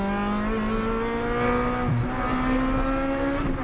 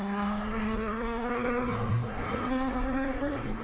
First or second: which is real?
first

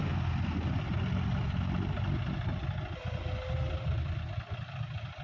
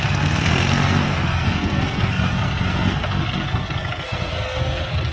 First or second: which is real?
first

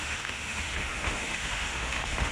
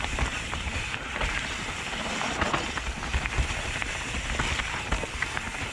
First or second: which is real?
second